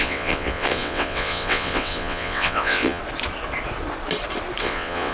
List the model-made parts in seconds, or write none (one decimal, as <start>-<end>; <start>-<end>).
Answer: 0.0-3.0; 4.6-5.1